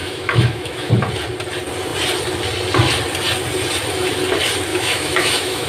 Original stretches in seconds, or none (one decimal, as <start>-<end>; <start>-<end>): 0.9-4.7